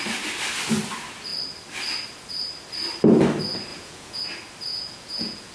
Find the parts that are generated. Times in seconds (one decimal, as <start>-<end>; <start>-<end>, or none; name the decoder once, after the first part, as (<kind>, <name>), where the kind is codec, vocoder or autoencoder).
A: 3.7-4.2 (vocoder, Vocos); 4.7-5.5